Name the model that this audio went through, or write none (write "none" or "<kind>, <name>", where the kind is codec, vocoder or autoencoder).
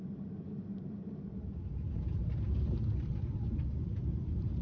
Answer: vocoder, BigVGAN v2